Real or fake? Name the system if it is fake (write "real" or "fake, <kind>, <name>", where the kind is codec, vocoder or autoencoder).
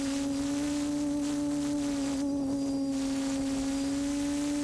real